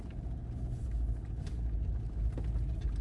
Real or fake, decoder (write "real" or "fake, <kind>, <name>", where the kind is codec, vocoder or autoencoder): real